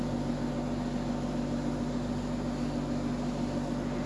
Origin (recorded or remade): recorded